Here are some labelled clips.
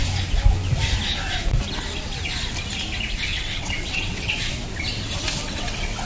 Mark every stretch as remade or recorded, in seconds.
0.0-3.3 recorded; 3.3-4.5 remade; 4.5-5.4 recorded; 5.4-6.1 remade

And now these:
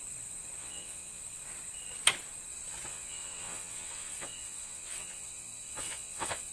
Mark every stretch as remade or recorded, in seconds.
0.0-0.6 recorded; 0.6-1.2 remade; 1.2-2.9 recorded; 2.9-6.5 remade

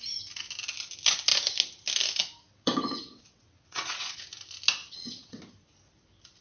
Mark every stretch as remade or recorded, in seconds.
0.0-2.5 recorded; 2.5-4.2 remade; 4.2-4.8 recorded; 4.8-5.4 remade; 5.4-6.4 recorded

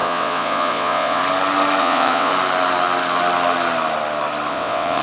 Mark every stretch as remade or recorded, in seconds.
0.0-1.2 remade; 1.2-1.8 recorded; 1.8-2.3 remade; 2.3-4.5 recorded; 4.5-5.0 remade

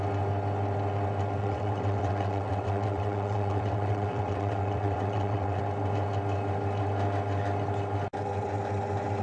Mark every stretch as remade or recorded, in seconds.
0.0-1.4 recorded; 1.4-5.6 remade; 5.6-9.2 recorded

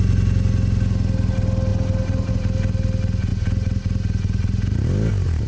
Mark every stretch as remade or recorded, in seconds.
0.0-5.5 recorded

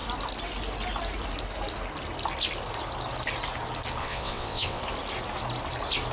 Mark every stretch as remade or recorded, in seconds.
0.0-4.0 recorded; 4.0-4.8 remade; 4.8-6.1 recorded